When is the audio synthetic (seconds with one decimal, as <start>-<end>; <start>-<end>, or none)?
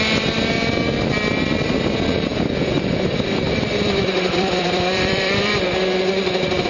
2.3-5.6